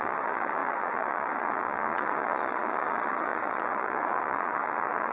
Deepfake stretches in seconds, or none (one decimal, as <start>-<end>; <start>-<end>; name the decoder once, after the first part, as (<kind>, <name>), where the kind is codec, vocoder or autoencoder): 0.0-5.1 (vocoder, Vocos)